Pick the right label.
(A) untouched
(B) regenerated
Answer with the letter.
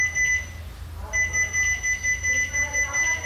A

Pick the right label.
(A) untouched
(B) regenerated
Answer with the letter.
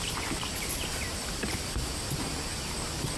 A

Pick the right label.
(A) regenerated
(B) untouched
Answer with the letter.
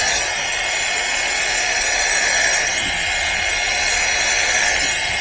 B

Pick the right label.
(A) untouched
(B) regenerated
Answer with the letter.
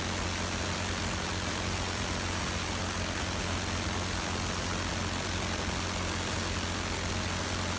A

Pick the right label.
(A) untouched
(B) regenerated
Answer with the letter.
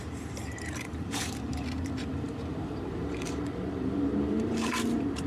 B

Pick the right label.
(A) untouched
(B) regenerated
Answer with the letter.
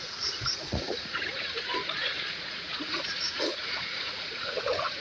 B